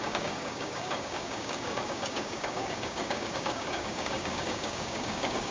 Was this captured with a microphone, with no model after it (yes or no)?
no